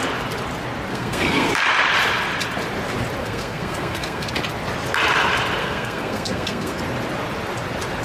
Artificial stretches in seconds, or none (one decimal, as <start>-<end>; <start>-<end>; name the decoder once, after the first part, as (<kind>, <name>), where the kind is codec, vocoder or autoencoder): 0.9-1.5 (codec, SNAC); 3.2-4.3; 5.6-6.8